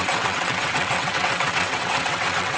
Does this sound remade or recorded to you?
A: remade